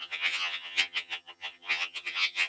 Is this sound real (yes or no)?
no